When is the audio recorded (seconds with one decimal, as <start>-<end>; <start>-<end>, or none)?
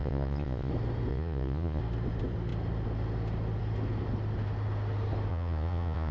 0.7-1.1; 1.8-5.3